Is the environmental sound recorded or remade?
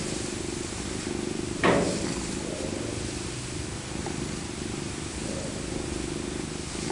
recorded